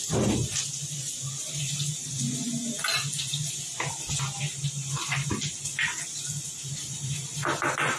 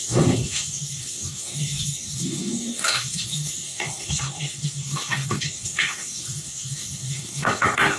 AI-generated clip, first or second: second